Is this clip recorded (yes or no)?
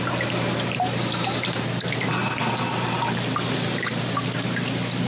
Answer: yes